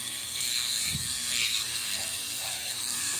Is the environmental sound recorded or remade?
remade